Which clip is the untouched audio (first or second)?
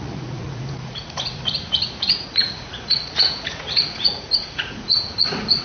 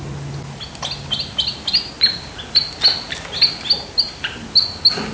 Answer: second